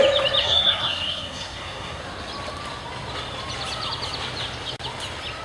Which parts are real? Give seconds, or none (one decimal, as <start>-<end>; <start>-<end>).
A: 0.0-0.4; 2.0-5.4

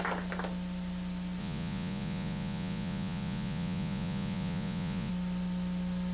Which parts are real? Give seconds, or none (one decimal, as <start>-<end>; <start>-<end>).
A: 0.0-1.4; 5.1-6.1

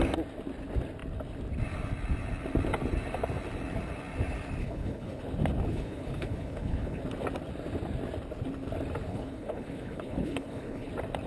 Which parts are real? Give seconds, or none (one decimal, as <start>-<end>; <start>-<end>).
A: 0.0-4.6; 5.2-5.7; 7.0-9.1; 10.9-11.3